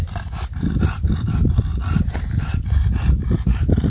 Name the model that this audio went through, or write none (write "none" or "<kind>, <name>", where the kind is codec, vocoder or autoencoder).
none